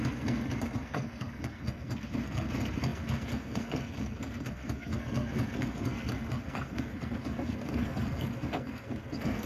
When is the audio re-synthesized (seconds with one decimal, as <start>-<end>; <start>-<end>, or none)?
0.0-9.5